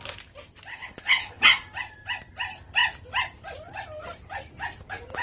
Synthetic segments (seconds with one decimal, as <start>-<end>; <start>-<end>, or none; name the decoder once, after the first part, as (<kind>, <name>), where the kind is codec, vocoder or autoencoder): 0.7-1.4 (codec, HILCodec)